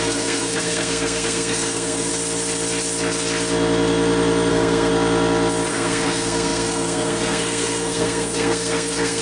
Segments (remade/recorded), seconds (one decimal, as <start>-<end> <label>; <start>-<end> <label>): 0.0-2.1 remade; 2.1-4.5 recorded; 4.5-4.9 remade; 4.9-5.7 recorded; 5.7-9.2 remade